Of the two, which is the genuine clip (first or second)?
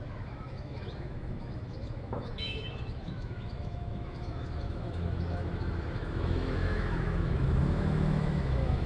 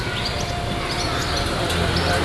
second